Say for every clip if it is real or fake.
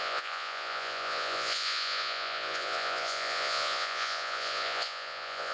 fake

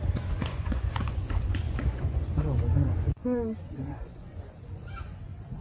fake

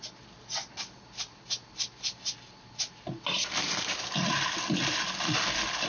real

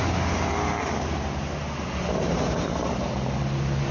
real